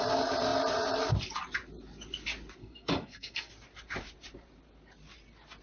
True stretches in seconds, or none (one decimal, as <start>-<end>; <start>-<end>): 0.0-2.6; 3.5-5.6

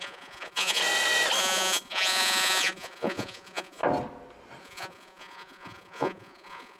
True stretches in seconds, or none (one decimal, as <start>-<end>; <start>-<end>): 0.8-1.4; 3.8-4.6

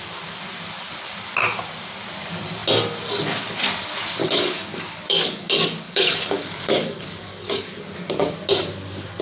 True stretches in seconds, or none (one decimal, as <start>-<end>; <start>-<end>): 0.0-4.2; 8.3-9.2

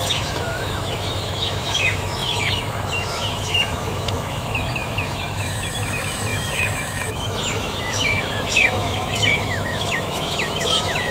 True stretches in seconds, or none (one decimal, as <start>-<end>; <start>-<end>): none

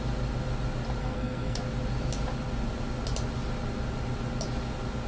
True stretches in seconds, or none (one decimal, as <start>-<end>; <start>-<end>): 0.0-1.0; 1.6-5.1

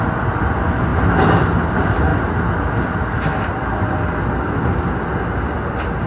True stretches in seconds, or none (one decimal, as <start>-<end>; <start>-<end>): 0.0-6.1

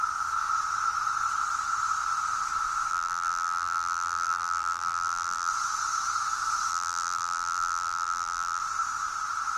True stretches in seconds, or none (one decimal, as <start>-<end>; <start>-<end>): 0.0-2.9; 5.5-6.7; 8.6-9.6